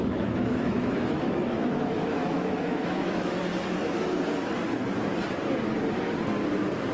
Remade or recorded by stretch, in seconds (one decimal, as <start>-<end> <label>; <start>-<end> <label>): 0.0-3.5 remade; 3.5-6.5 recorded; 6.5-6.9 remade